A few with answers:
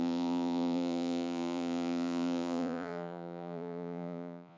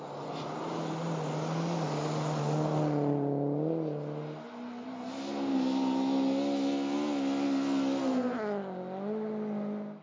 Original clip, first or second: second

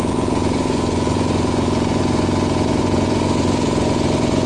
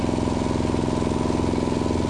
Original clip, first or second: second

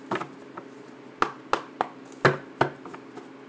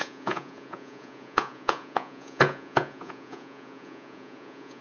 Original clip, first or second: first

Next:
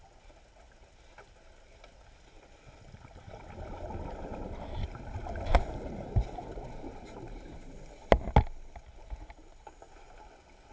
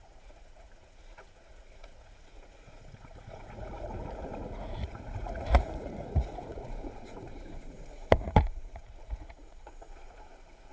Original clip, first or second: first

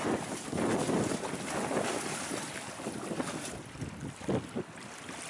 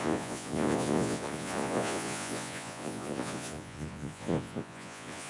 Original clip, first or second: first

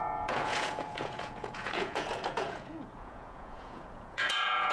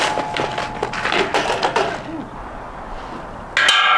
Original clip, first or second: second